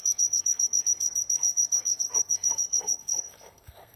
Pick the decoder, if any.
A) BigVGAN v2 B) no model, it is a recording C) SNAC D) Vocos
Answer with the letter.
C